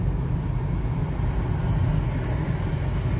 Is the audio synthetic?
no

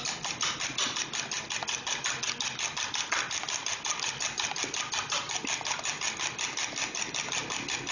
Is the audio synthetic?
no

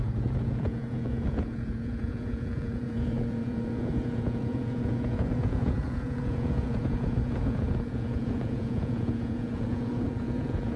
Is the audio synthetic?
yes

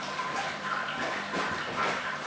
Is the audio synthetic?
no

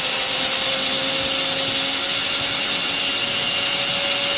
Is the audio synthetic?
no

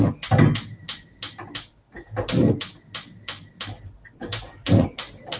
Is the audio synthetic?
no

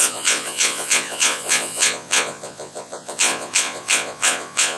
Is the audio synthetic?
yes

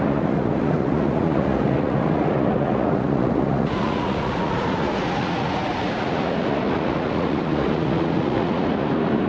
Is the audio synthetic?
yes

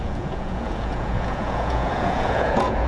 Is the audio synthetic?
yes